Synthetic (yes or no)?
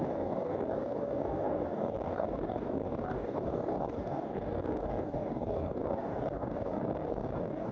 yes